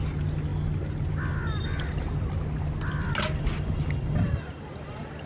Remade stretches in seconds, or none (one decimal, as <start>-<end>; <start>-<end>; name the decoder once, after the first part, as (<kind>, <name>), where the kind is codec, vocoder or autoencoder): none